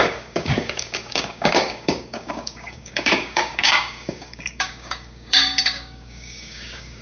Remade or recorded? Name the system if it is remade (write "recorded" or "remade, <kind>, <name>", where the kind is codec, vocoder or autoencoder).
remade, codec, DAC